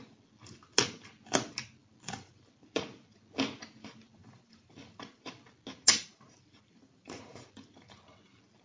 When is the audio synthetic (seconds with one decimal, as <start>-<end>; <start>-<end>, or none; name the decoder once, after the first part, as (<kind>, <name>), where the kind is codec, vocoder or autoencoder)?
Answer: 1.8-2.8 (vocoder, BigVGAN v2); 4.2-5.3; 6.0-7.3